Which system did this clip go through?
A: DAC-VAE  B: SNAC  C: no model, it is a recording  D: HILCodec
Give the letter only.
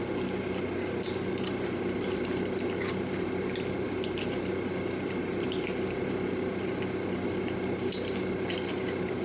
C